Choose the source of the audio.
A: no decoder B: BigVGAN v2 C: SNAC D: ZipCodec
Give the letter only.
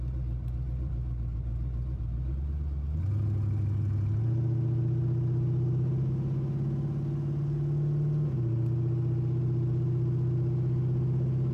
A